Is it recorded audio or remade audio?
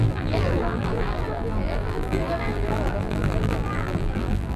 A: remade